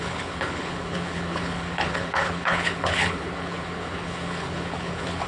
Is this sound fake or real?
fake